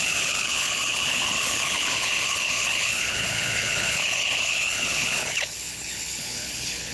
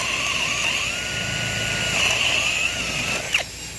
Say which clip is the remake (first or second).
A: first